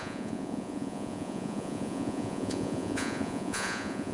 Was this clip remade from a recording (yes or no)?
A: yes